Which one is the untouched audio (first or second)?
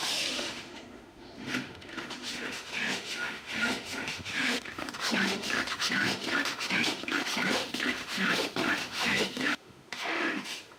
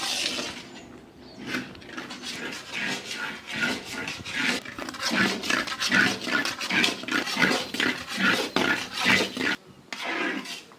second